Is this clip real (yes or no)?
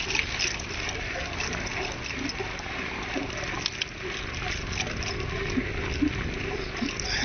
yes